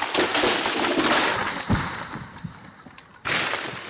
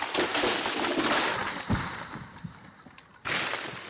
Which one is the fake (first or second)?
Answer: second